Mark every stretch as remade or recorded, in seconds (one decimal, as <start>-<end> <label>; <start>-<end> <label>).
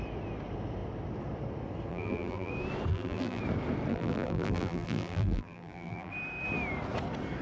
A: 0.0-1.9 recorded; 1.9-2.5 remade; 2.5-2.9 recorded; 2.9-3.4 remade; 3.4-3.9 recorded; 3.9-6.1 remade; 6.1-7.4 recorded